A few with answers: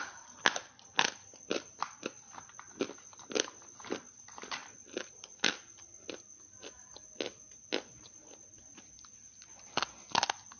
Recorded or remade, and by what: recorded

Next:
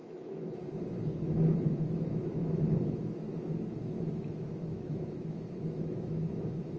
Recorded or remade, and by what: remade, autoencoder, DAC-VAE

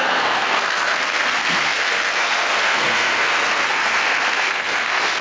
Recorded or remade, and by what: remade, codec, SNAC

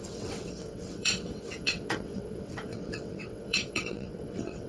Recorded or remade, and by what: remade, vocoder, WaveNeXt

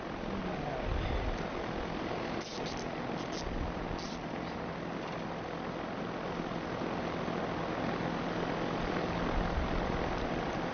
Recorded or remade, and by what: recorded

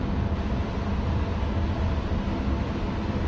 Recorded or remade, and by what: recorded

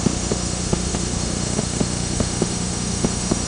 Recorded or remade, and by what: remade, autoencoder, DAC-VAE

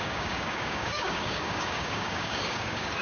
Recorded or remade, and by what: remade, codec, DAC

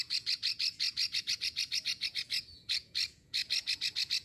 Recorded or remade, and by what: remade, vocoder, Vocos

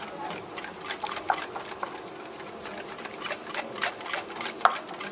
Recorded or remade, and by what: recorded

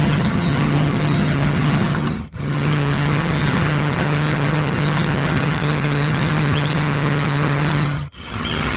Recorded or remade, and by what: remade, vocoder, HiFi-GAN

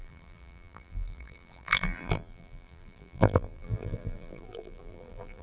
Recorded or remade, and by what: remade, vocoder, BigVGAN v2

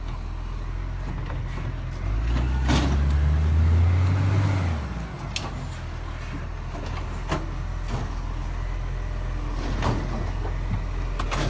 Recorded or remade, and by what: recorded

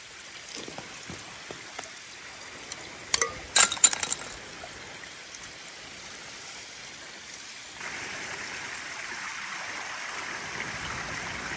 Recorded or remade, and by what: recorded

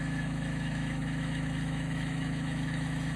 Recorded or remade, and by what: remade, autoencoder, DAC-VAE